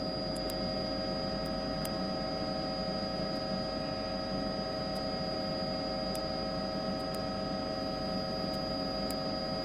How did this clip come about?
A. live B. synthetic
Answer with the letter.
A